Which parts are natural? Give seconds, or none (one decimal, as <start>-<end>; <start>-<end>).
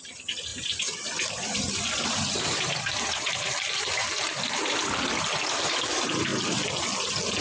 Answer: 0.0-0.5; 4.1-7.4